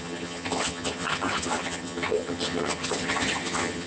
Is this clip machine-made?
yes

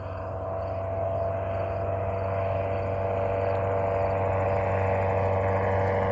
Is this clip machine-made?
no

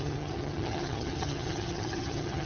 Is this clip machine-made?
yes